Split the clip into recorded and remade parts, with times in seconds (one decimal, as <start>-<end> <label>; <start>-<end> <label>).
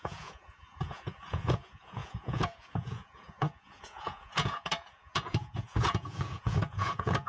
0.0-7.3 remade